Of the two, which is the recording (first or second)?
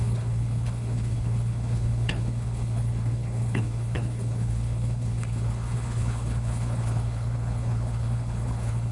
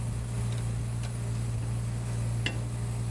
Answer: second